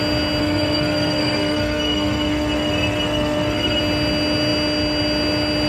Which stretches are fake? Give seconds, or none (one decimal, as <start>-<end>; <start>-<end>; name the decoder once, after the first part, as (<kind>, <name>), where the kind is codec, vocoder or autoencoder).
0.4-3.8 (codec, SNAC)